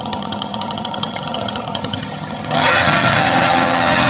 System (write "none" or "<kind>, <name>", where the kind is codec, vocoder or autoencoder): vocoder, HiFi-GAN